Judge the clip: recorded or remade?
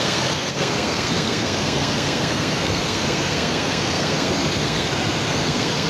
remade